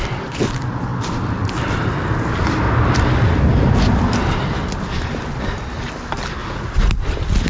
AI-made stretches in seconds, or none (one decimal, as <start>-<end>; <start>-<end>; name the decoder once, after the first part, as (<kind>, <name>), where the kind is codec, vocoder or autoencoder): 6.4-6.9 (vocoder, Vocos)